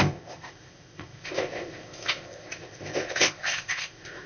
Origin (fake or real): fake